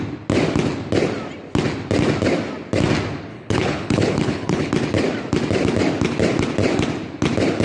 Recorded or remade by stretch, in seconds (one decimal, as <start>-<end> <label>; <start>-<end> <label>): 0.0-3.3 recorded; 3.3-4.7 remade; 4.7-7.6 recorded